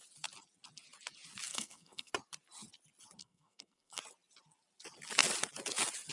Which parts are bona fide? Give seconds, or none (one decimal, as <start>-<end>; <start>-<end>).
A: 0.0-1.5; 2.1-3.2; 4.0-6.1